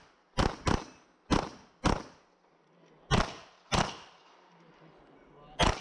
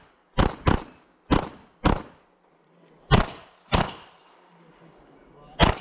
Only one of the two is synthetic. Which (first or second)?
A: second